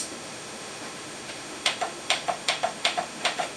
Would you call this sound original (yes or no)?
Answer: no